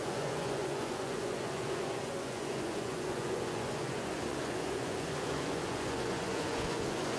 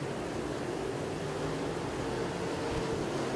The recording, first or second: second